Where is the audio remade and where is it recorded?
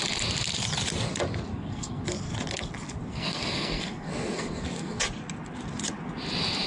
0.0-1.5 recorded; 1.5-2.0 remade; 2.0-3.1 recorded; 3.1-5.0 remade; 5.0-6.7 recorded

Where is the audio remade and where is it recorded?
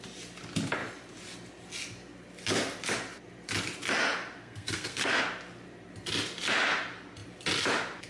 0.0-4.4 recorded; 4.4-5.2 remade; 5.2-8.1 recorded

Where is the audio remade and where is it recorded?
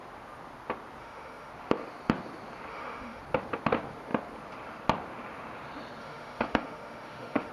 0.0-1.0 recorded; 1.0-1.5 remade; 1.5-2.7 recorded; 2.7-3.2 remade; 3.2-6.0 recorded; 6.0-7.5 remade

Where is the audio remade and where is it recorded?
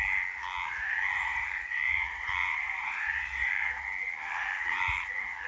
0.0-1.3 recorded; 1.3-3.8 remade; 3.8-5.5 recorded